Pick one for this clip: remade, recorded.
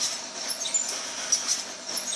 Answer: recorded